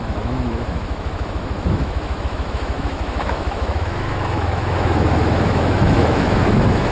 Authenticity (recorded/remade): remade